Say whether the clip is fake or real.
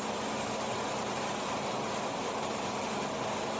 real